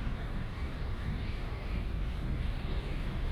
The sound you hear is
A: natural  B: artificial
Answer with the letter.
B